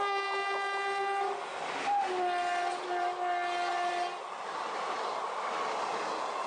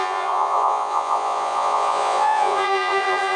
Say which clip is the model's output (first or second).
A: second